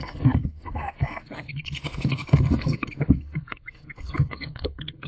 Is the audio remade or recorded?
remade